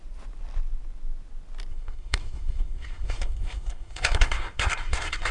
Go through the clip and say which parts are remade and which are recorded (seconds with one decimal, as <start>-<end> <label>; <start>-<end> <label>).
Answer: 0.0-1.7 recorded; 1.7-5.3 remade